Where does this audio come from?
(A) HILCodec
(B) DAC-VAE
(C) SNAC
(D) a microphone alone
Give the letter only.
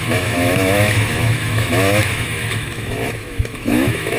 B